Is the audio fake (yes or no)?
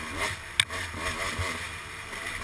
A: no